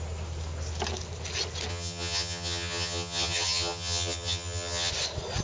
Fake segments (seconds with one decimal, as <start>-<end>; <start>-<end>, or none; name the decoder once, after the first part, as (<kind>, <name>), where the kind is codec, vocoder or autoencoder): 1.7-4.9 (vocoder, HiFi-GAN)